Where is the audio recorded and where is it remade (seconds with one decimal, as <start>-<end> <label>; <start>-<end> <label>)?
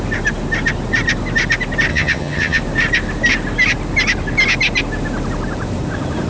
0.0-1.9 recorded; 1.9-2.6 remade; 2.6-6.3 recorded